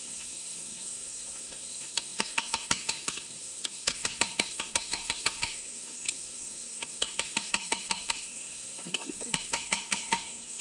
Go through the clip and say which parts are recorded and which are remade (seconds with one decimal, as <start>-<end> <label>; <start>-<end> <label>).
0.0-10.6 remade